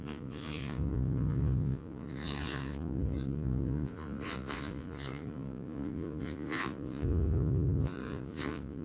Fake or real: fake